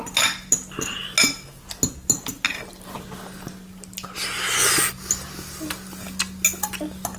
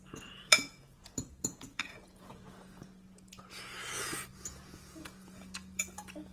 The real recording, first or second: first